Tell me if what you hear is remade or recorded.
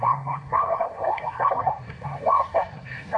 remade